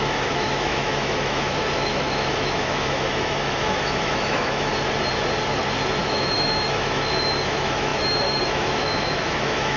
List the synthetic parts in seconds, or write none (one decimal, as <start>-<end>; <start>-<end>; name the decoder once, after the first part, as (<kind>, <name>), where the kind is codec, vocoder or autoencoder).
0.0-4.7 (autoencoder, DAC-VAE); 6.0-9.8